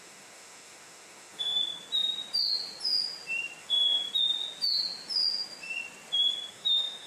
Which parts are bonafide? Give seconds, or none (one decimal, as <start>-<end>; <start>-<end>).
1.6-3.6; 4.0-6.5